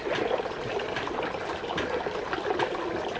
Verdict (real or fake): real